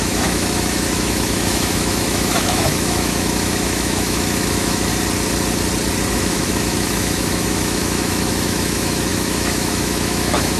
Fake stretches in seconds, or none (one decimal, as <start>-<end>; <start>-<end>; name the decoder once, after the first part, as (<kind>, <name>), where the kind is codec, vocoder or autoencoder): 0.0-4.9 (autoencoder, DAC-VAE); 6.1-10.6